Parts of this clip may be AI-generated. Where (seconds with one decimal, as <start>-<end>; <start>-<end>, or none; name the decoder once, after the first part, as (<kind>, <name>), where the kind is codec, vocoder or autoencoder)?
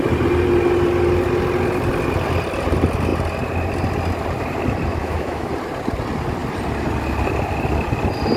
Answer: 5.0-5.5 (autoencoder, DAC-VAE)